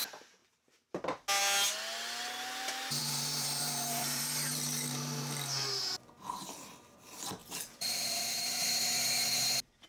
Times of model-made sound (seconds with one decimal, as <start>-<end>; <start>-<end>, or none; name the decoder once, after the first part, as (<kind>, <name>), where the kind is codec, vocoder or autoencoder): 3.0-5.2 (vocoder, BigVGAN v2); 7.4-8.6